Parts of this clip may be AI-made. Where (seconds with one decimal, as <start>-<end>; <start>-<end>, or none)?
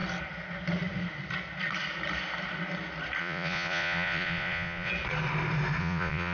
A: 3.2-4.9; 5.8-6.3